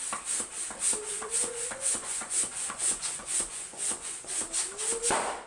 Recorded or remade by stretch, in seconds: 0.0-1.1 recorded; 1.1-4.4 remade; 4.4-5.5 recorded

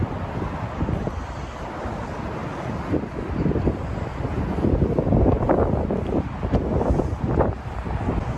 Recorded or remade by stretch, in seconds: 0.0-8.4 recorded

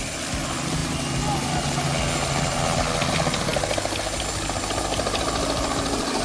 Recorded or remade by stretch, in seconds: 0.0-6.2 recorded